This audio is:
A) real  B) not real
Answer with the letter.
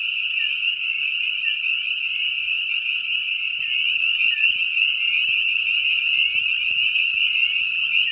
A